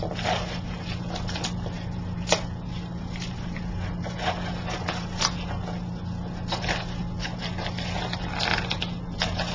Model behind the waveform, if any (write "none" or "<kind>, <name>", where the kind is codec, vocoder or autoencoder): none